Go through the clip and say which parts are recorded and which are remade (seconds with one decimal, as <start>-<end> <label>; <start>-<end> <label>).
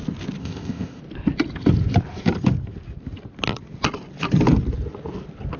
0.0-0.4 recorded; 0.4-1.0 remade; 1.0-5.6 recorded